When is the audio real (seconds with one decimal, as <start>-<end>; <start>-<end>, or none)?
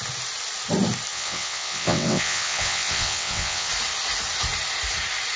0.0-1.1; 3.7-5.4